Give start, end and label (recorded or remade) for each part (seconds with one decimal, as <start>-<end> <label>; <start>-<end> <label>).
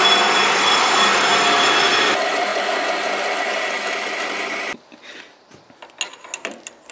0.0-6.9 recorded